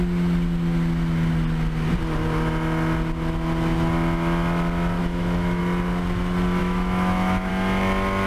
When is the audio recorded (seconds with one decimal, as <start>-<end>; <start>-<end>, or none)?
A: 0.0-5.0; 5.6-6.6; 7.5-8.3